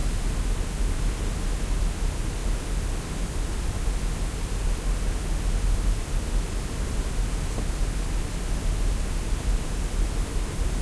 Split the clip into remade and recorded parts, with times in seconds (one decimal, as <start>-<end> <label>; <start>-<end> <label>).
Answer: 0.0-10.8 recorded